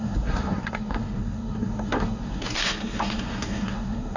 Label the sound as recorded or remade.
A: remade